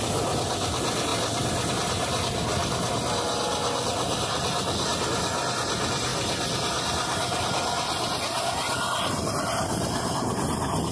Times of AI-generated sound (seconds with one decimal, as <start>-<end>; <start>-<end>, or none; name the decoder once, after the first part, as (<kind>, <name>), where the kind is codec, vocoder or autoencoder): none